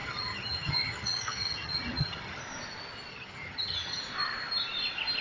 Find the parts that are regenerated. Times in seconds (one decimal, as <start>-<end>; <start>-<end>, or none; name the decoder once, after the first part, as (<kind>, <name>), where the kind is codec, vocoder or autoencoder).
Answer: 0.0-2.4 (vocoder, HiFi-GAN); 3.1-4.0